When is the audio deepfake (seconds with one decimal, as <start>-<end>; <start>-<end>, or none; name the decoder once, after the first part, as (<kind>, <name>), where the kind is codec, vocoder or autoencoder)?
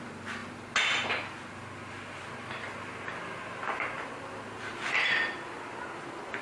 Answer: none